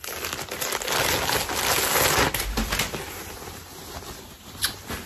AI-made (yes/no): no